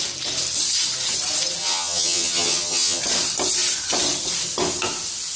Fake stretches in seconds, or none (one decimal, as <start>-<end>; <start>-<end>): 1.6-3.0